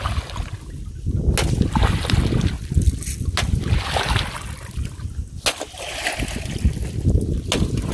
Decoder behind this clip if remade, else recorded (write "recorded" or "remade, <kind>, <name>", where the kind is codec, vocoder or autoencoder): recorded